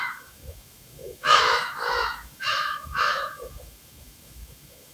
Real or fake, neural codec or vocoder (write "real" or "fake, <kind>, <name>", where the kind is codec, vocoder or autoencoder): fake, autoencoder, DAC-VAE